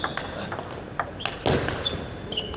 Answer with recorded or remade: recorded